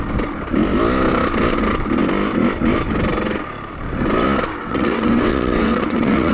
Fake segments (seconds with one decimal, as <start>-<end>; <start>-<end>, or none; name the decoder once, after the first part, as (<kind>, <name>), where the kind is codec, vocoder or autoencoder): 4.6-6.3 (vocoder, WaveNeXt)

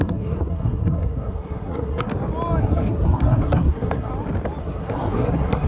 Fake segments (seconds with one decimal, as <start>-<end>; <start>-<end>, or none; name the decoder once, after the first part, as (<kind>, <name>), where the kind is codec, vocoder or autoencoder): 0.0-2.1 (codec, SNAC); 2.6-4.1; 4.6-5.7

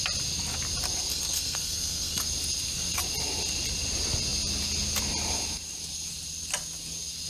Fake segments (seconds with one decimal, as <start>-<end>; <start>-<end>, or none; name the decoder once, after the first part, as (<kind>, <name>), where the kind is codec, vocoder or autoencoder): 1.1-2.2 (codec, SNAC)

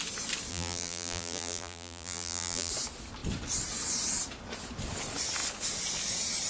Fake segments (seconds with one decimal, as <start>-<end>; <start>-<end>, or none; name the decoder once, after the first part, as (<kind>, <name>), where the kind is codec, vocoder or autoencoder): 0.5-2.7 (vocoder, BigVGAN v2)

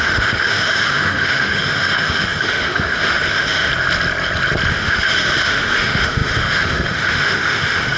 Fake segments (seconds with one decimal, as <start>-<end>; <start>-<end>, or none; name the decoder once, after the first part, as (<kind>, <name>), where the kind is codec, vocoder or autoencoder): 0.0-3.7 (autoencoder, DAC-VAE); 4.7-8.0

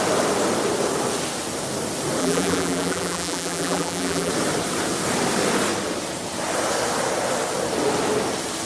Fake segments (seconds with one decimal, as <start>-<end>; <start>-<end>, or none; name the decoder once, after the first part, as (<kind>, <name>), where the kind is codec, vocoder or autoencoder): 2.2-4.3 (vocoder, BigVGAN v2)

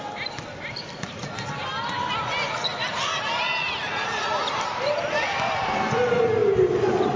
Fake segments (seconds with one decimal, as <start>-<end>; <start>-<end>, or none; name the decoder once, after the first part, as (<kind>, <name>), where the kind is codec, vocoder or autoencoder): 2.8-4.5 (vocoder, BigVGAN v2); 6.4-7.2

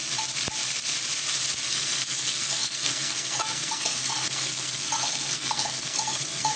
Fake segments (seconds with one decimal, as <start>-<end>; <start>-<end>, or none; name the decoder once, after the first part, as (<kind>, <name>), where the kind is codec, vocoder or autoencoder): 1.7-6.6 (codec, SNAC)